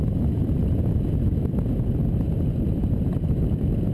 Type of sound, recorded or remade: recorded